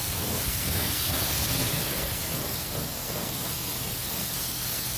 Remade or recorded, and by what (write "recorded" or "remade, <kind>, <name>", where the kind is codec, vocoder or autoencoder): remade, codec, SNAC